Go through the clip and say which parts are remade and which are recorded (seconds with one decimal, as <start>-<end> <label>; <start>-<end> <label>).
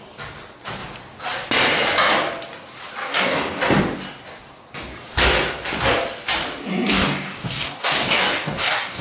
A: 0.0-3.0 recorded; 3.0-3.6 remade; 3.6-6.9 recorded; 6.9-9.0 remade